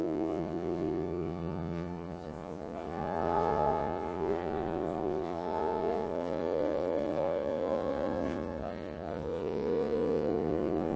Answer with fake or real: fake